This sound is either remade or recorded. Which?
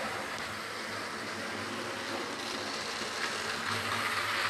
recorded